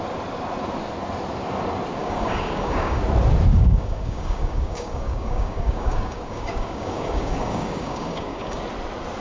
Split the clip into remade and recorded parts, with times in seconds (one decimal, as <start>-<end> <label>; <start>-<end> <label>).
0.0-2.0 recorded; 2.0-3.0 remade; 3.0-3.5 recorded; 3.5-8.6 remade; 8.6-9.2 recorded